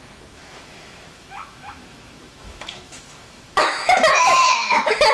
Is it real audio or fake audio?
fake